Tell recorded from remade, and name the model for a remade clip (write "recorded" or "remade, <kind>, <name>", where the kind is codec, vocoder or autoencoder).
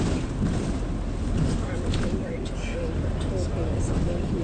recorded